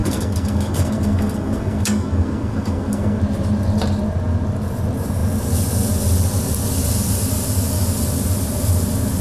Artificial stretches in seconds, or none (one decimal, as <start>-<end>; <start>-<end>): 0.0-3.2